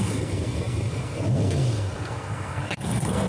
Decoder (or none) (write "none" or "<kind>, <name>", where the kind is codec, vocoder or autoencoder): codec, SNAC